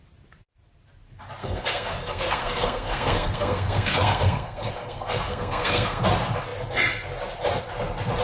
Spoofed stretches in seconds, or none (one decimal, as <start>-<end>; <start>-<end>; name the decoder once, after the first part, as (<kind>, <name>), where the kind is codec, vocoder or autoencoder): 1.4-6.0 (codec, SNAC)